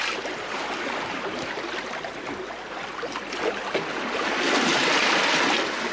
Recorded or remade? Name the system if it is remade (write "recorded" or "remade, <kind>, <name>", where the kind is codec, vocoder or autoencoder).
recorded